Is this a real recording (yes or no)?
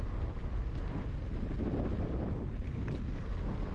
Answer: yes